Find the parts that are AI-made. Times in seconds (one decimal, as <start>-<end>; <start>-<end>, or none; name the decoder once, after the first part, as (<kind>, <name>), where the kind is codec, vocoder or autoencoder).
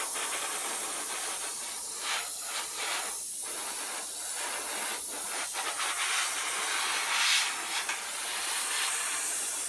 3.6-4.3 (vocoder, BigVGAN v2)